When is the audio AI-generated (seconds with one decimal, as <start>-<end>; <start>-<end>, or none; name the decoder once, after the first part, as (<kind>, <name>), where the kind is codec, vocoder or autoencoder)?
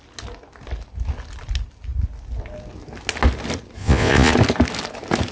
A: 3.8-4.3 (vocoder, Vocos)